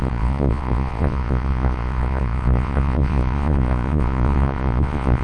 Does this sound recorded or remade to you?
remade